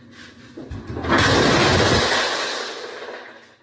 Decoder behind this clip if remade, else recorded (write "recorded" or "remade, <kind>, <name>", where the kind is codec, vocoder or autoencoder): recorded